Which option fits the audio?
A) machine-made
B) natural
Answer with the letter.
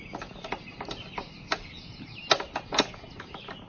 B